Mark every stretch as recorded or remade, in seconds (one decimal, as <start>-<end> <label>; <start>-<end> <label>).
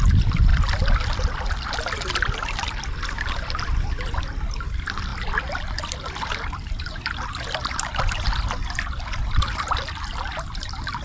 0.0-11.0 recorded